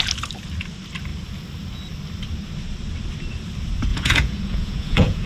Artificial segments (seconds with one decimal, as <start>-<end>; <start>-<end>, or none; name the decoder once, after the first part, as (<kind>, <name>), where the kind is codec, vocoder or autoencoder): 3.9-5.3 (vocoder, Vocos)